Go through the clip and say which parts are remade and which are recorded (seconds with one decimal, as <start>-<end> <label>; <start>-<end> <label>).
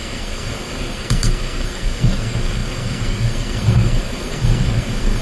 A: 0.0-5.2 remade